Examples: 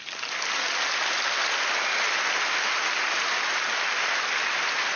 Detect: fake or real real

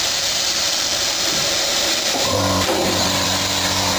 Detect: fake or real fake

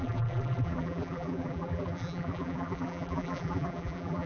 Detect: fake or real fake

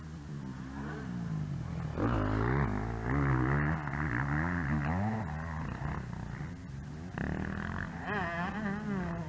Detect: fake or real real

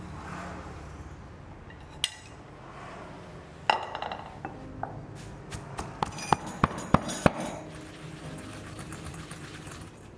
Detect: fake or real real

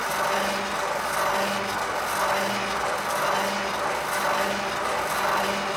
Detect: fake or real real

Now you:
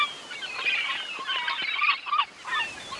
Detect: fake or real real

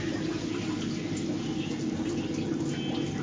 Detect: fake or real real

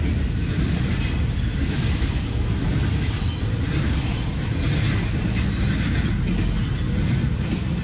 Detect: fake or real real